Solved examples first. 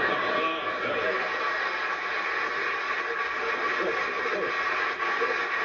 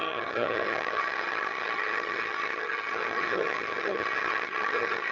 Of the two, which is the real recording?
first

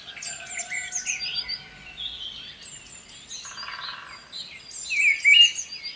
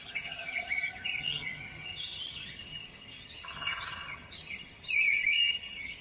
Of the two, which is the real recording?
first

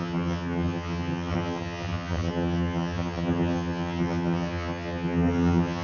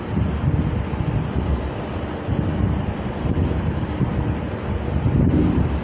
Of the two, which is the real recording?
second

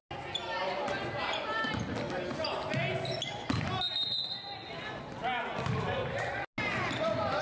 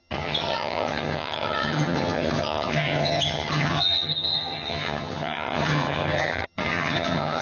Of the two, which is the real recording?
first